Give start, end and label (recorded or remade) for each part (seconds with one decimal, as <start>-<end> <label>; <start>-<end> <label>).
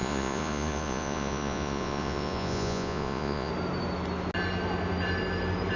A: 0.0-3.5 remade; 3.5-5.8 recorded